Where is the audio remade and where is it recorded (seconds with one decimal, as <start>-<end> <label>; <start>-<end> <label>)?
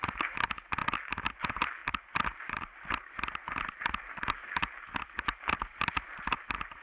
0.0-6.8 recorded